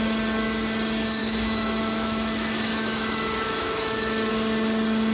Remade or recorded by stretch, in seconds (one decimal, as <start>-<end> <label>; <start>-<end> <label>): 0.0-1.2 recorded; 1.2-4.3 remade; 4.3-5.1 recorded